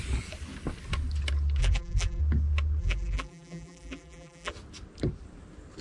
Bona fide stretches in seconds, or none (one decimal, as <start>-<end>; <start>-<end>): 0.0-1.6; 2.2-2.8; 4.5-5.8